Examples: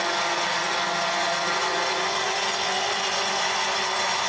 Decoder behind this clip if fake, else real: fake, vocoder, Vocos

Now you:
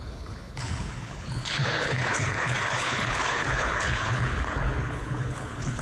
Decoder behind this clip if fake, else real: fake, codec, HILCodec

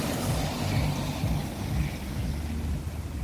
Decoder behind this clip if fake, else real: real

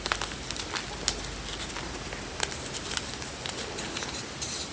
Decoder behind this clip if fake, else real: real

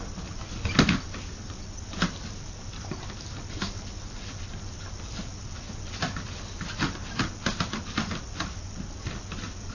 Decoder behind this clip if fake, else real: real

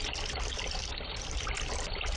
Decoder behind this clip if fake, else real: fake, vocoder, BigVGAN v2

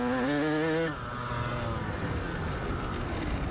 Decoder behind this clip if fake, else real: real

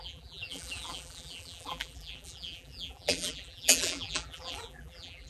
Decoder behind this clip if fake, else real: fake, vocoder, BigVGAN v2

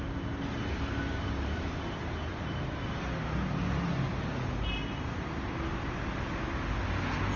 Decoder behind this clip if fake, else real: real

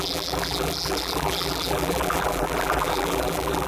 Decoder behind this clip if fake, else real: fake, vocoder, BigVGAN v2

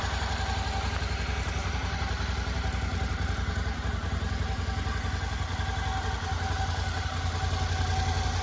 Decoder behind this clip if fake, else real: real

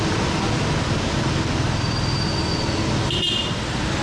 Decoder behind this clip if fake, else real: real